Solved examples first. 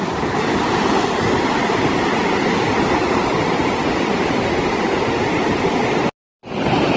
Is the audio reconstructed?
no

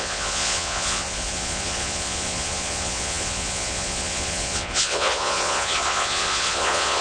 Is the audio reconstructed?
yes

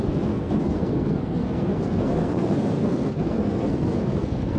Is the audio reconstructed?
yes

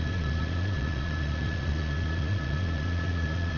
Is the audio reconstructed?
yes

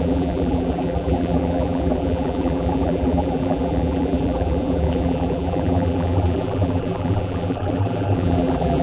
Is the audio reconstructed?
yes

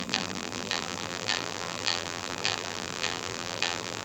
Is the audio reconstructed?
yes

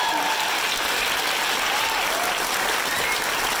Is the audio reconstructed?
no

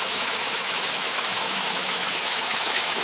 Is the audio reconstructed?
yes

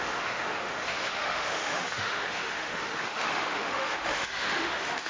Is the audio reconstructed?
yes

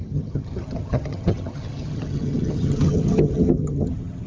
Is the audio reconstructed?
yes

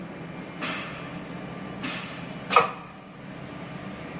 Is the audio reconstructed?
no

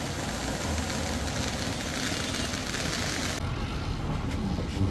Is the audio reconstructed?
no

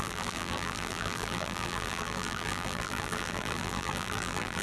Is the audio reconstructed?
yes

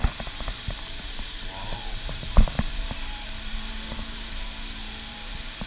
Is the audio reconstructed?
yes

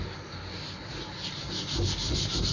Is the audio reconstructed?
no